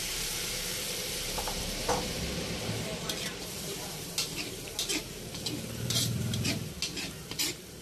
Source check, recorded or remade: remade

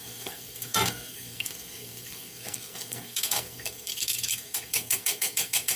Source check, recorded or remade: remade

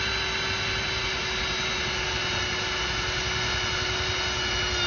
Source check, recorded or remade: recorded